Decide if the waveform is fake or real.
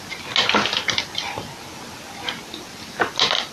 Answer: real